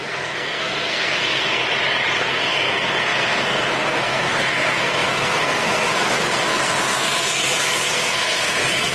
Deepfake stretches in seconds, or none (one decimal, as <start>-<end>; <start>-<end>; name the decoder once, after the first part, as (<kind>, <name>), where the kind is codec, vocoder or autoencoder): 0.0-1.6 (codec, SNAC); 2.2-8.9